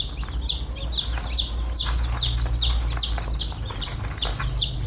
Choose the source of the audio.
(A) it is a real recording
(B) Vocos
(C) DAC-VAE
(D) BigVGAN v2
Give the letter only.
A